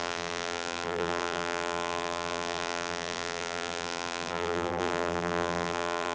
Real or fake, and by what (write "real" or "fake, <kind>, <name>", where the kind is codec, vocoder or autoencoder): fake, vocoder, BigVGAN v2